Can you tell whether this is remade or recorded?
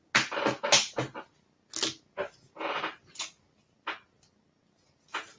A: recorded